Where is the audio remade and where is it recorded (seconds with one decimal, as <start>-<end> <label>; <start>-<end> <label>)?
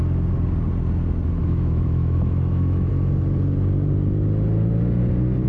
0.0-1.4 recorded; 1.4-2.9 remade; 2.9-5.5 recorded